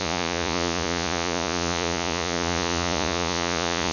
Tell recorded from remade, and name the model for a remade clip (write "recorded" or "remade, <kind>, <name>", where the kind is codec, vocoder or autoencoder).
remade, vocoder, Vocos